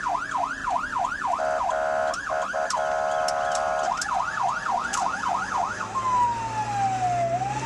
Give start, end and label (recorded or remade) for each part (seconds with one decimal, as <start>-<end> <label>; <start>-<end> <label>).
0.0-0.6 recorded; 0.6-1.4 remade; 1.4-7.7 recorded